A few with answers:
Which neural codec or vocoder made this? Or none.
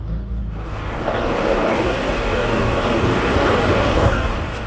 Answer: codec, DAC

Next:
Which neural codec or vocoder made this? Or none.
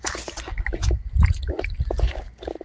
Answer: none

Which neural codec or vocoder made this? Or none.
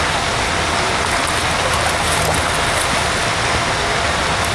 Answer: none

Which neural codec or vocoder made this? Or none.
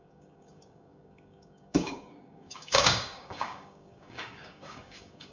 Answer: codec, DAC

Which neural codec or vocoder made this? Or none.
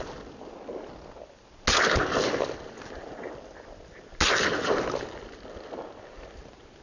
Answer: none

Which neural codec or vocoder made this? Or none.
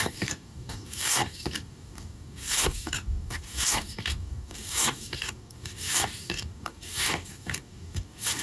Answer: codec, DAC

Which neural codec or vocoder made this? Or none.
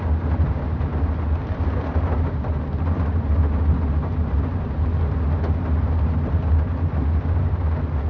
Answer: none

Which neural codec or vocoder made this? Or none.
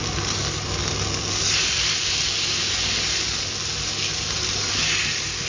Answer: none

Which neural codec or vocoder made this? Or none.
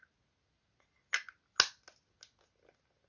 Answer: none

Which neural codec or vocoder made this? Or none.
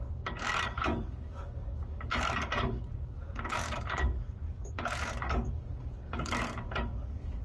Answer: codec, DAC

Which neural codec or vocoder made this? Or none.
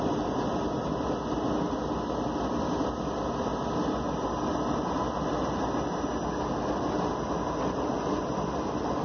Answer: none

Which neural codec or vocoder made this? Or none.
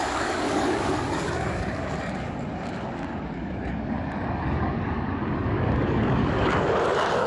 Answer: codec, DAC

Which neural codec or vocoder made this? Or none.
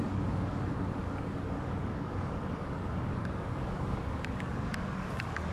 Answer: codec, DAC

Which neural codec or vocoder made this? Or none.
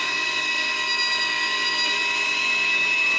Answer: codec, DAC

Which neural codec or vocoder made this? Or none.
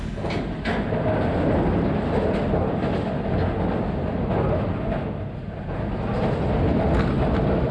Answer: none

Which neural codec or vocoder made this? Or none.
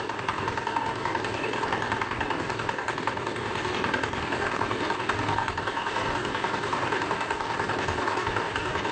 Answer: codec, DAC